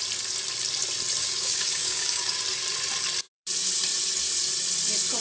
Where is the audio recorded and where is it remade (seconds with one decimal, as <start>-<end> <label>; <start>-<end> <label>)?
0.0-1.2 recorded; 1.2-2.4 remade; 2.4-5.2 recorded